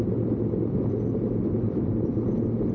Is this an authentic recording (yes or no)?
yes